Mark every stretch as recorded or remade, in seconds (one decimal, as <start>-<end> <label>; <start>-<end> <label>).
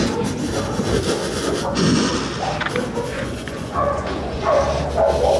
0.0-1.2 recorded; 1.2-2.1 remade; 2.1-3.1 recorded; 3.1-4.6 remade; 4.6-5.4 recorded